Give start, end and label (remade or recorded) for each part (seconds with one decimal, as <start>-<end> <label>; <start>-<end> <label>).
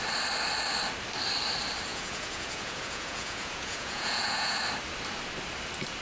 0.0-1.9 recorded; 1.9-4.6 remade; 4.6-6.0 recorded